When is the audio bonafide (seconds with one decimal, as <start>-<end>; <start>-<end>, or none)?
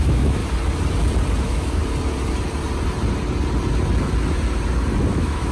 0.4-1.4; 1.8-5.1